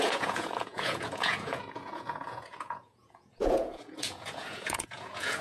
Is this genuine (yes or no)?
no